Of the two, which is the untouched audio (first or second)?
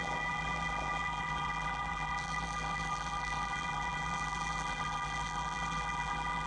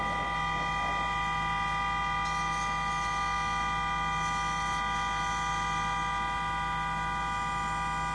second